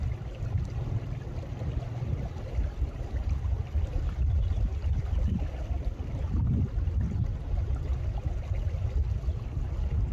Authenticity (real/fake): real